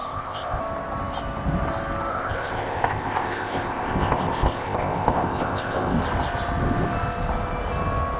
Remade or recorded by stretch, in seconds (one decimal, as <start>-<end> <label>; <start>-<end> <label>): 0.0-0.6 remade; 0.6-2.1 recorded; 2.1-6.0 remade; 6.0-8.2 recorded